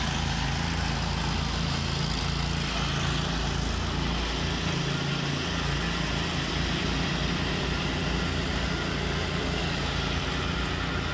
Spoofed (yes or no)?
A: no